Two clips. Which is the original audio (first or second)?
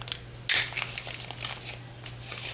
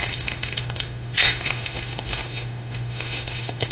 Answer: first